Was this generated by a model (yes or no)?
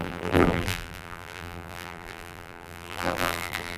yes